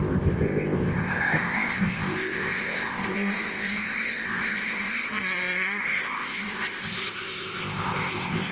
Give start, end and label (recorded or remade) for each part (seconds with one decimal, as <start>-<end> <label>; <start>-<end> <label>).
0.0-5.1 remade; 5.1-5.8 recorded; 5.8-8.5 remade